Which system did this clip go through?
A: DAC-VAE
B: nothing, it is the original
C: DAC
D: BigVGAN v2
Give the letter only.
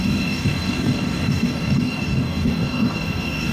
C